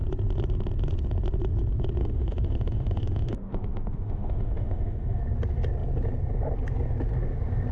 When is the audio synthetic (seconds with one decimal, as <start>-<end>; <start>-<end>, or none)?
2.0-5.2